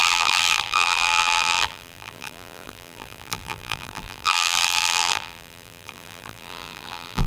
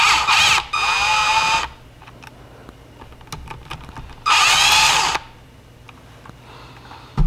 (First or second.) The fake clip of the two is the first